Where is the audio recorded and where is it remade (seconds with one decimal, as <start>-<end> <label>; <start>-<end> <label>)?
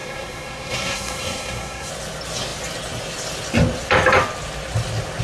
0.0-1.9 remade; 1.9-5.2 recorded